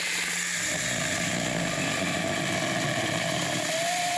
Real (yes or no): yes